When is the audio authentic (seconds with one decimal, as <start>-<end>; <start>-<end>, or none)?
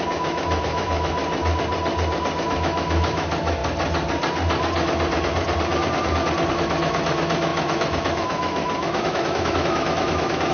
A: 1.2-2.4; 3.6-6.5